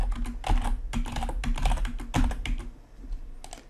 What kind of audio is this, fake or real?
real